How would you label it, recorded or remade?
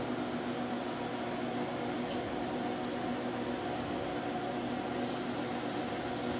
recorded